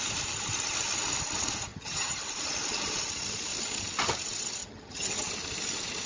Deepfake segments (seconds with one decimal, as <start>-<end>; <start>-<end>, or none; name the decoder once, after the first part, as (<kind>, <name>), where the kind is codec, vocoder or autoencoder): 1.7-2.2 (vocoder, HiFi-GAN); 4.6-5.3